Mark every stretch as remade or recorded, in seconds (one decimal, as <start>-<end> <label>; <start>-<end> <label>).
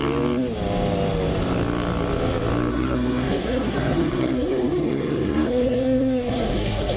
0.0-2.7 recorded; 2.7-7.0 remade